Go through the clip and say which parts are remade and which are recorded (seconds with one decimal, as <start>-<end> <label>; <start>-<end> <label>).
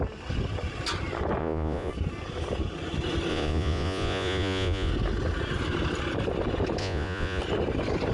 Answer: 0.0-1.4 recorded; 1.4-1.9 remade; 1.9-3.3 recorded; 3.3-4.9 remade; 4.9-6.8 recorded; 6.8-7.4 remade; 7.4-8.1 recorded